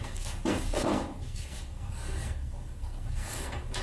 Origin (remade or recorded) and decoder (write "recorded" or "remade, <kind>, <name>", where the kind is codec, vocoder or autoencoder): remade, codec, SNAC